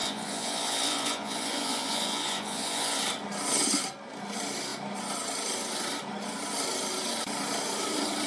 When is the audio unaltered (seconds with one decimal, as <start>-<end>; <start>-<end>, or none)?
3.0-8.3